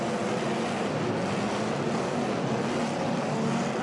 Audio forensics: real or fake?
real